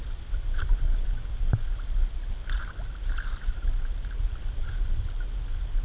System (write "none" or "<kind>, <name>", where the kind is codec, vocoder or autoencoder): none